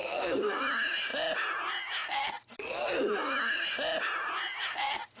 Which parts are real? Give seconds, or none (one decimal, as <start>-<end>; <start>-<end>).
0.6-5.2